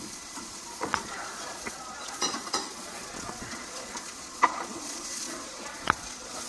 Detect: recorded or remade remade